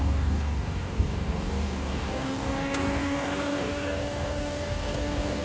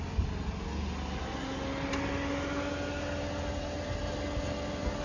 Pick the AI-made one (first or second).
first